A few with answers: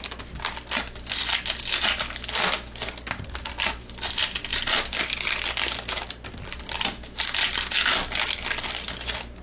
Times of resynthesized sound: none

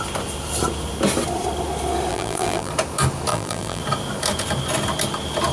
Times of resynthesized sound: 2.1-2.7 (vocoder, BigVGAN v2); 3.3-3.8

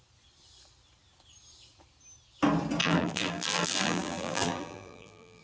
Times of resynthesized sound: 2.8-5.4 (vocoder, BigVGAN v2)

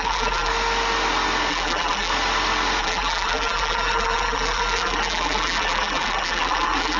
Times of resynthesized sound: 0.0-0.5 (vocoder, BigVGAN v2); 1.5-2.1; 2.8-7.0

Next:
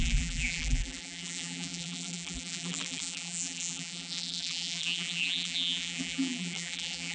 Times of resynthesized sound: 0.0-7.1 (vocoder, BigVGAN v2)

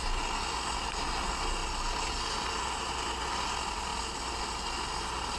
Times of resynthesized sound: none